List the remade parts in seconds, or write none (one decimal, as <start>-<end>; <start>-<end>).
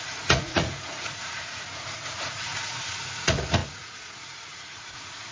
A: 0.0-5.3